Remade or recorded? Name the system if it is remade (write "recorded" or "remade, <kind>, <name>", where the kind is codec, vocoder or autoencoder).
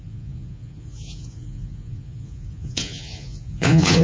remade, vocoder, Vocos